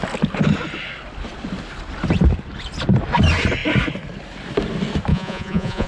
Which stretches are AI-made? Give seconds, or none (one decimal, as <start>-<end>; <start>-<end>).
5.1-5.9